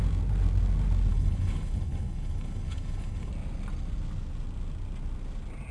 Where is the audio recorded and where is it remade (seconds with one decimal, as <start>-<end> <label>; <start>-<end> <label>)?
0.0-1.1 recorded; 1.1-3.3 remade; 3.3-5.7 recorded